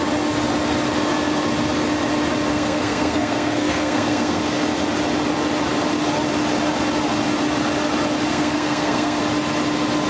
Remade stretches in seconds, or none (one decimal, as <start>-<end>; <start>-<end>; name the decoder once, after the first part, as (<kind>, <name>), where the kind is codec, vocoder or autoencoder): 2.5-4.4 (codec, SNAC); 8.3-9.2